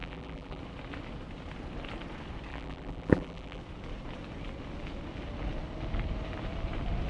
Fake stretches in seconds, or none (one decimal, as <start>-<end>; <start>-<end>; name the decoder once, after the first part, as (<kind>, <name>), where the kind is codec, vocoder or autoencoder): 0.0-0.6 (vocoder, BigVGAN v2); 2.5-3.6